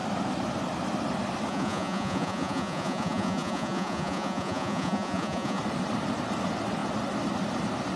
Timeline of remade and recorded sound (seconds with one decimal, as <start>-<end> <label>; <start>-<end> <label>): 0.0-1.5 recorded; 1.5-5.6 remade; 5.6-8.0 recorded